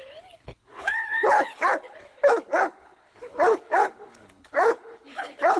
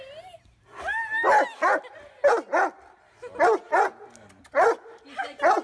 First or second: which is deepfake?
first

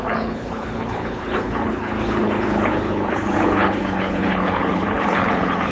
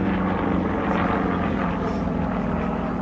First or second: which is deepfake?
first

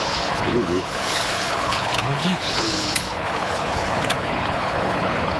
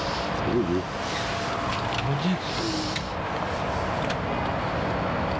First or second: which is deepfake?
first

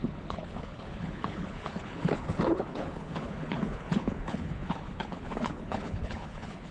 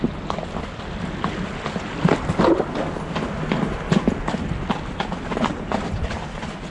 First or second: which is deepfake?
first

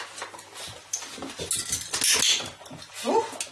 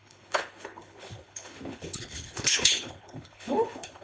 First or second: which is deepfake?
second